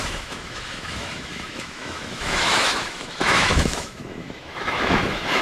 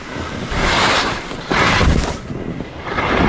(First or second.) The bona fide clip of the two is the second